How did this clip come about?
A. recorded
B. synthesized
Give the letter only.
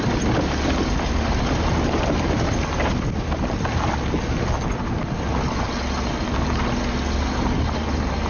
A